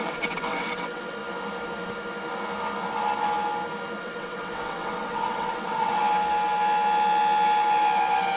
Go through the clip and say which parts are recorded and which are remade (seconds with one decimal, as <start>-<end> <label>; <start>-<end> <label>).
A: 0.0-1.2 remade; 1.2-4.0 recorded; 4.0-6.0 remade; 6.0-8.4 recorded